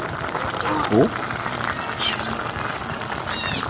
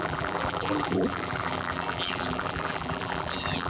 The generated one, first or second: second